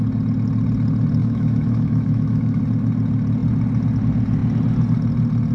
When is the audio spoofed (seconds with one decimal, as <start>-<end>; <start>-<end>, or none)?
1.2-2.6